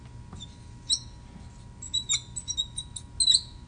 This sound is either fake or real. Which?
real